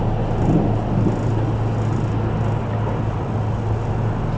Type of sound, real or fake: real